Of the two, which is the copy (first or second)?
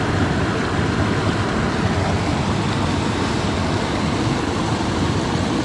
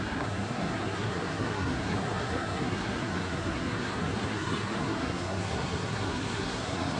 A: second